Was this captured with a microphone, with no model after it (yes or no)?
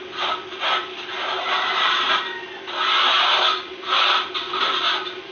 yes